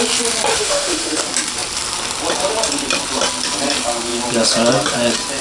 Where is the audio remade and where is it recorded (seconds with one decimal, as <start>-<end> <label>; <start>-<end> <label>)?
0.0-0.5 recorded; 0.5-1.2 remade; 1.2-5.4 recorded